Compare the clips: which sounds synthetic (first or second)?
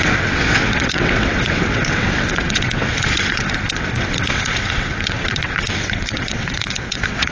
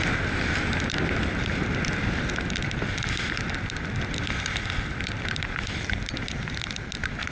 first